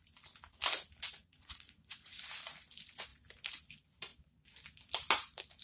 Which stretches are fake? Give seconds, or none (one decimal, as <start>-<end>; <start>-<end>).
1.2-2.2